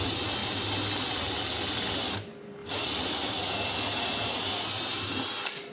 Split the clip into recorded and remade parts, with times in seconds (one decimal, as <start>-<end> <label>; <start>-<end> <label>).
0.0-5.7 recorded